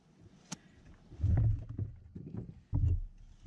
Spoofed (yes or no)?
no